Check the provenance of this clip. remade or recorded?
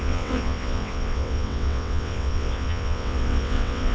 remade